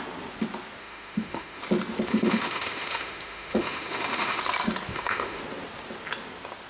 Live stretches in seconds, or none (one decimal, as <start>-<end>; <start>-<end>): 0.0-0.8; 1.6-2.1; 4.4-4.9; 5.4-6.7